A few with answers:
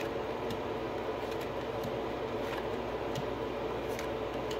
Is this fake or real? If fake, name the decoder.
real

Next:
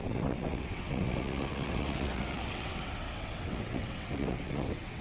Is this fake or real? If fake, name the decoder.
fake, vocoder, WaveNeXt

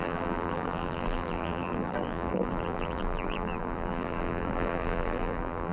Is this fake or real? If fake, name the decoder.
fake, vocoder, BigVGAN v2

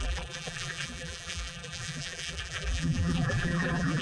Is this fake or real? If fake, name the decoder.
fake, vocoder, BigVGAN v2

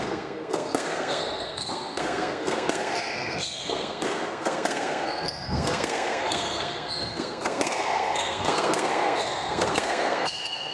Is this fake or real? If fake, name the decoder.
fake, codec, SNAC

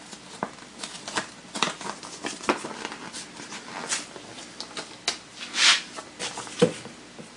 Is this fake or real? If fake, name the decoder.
real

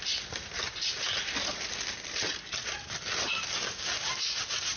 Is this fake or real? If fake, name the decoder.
real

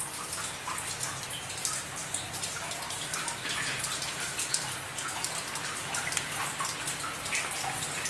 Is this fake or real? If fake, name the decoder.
real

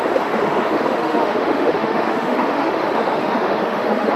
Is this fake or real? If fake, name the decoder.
fake, autoencoder, DAC-VAE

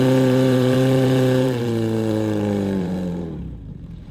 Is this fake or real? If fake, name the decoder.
fake, vocoder, BigVGAN v2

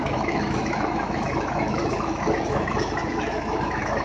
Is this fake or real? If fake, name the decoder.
fake, autoencoder, DAC-VAE